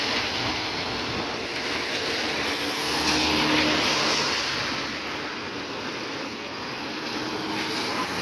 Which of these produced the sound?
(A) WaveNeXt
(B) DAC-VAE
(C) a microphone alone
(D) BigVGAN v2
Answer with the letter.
C